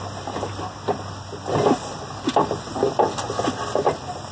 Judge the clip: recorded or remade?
recorded